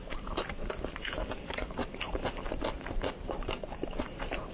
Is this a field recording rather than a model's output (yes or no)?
no